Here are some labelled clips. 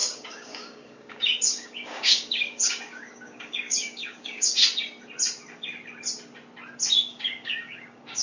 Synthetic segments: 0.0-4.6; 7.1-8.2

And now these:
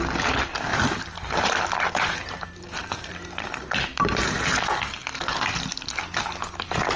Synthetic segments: 0.7-4.2